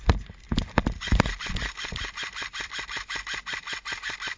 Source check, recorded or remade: recorded